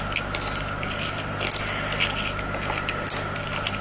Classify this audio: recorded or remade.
recorded